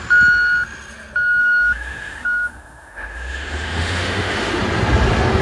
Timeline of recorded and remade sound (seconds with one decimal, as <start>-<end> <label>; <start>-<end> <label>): 0.0-1.4 recorded; 1.4-4.6 remade; 4.6-5.4 recorded